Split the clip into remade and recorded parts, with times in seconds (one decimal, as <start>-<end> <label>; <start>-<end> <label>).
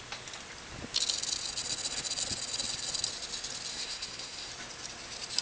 0.0-3.7 recorded; 3.7-4.5 remade; 4.5-5.4 recorded